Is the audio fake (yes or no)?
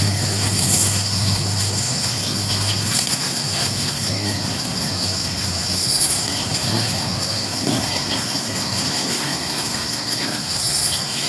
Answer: yes